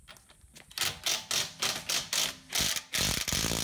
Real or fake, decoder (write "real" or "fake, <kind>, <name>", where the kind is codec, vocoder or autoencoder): real